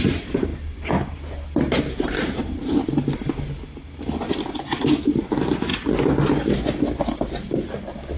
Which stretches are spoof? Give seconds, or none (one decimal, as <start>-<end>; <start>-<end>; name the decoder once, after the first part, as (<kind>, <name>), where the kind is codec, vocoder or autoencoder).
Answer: 0.0-0.5 (vocoder, BigVGAN v2); 1.9-5.7